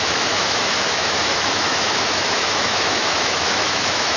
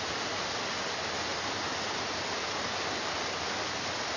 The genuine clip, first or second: second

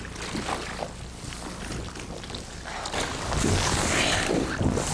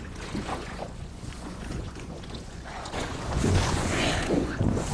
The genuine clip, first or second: first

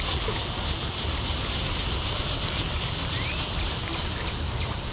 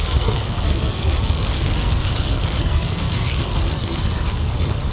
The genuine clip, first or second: first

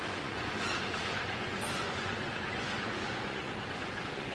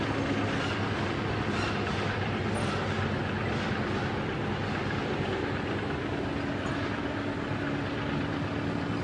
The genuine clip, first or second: second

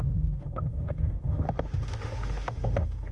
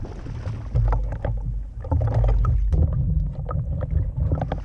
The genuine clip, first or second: second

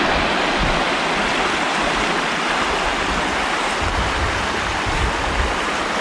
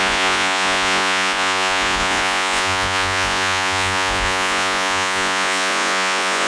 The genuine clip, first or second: first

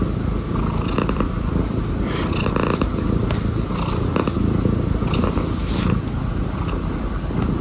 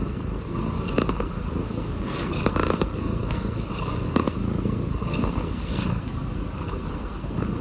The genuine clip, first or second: first